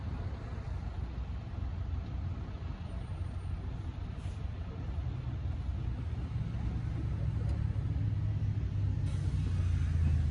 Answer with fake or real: real